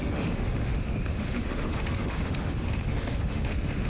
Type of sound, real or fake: fake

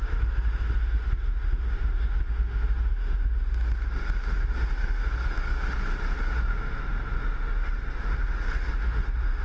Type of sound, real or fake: fake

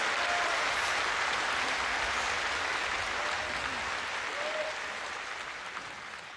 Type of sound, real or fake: real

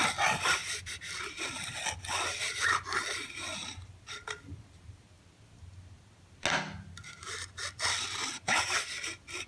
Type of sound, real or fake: real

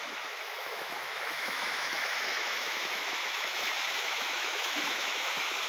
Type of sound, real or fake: fake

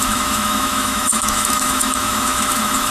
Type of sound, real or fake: fake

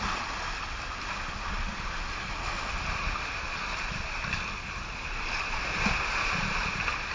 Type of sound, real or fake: real